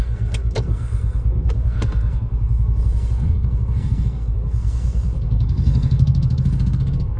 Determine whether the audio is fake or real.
fake